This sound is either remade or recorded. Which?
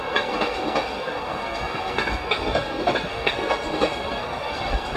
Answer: remade